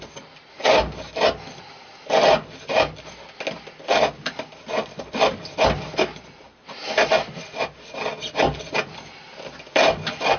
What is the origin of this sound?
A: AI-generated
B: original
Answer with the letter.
B